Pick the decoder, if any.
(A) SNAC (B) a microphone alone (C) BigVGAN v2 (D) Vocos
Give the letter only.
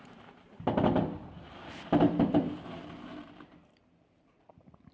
C